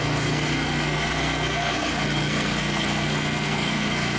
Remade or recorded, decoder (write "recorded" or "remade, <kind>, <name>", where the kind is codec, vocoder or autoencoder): remade, codec, SNAC